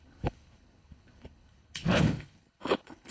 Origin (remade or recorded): remade